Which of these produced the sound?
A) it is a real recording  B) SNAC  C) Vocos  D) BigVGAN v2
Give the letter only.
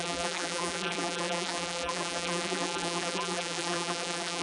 D